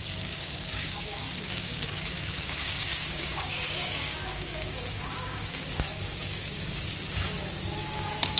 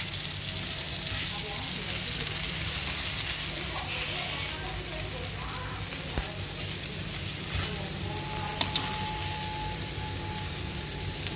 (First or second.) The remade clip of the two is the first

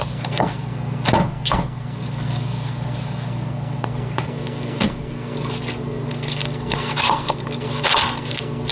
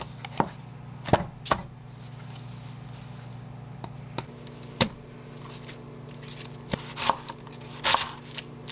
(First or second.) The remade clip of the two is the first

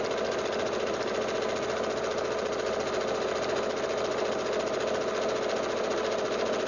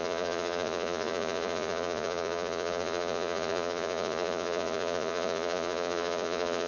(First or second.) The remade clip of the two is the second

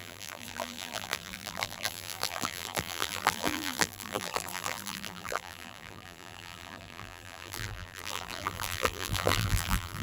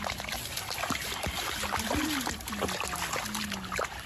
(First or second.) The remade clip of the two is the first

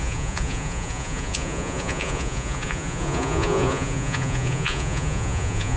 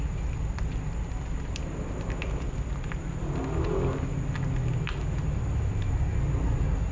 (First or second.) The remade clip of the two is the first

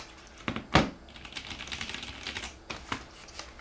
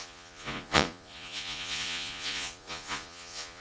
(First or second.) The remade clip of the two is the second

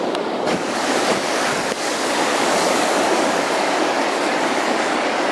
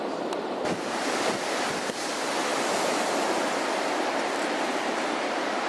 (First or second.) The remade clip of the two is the first